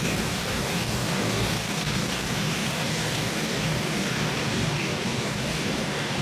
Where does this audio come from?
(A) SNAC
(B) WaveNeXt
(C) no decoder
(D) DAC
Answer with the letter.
D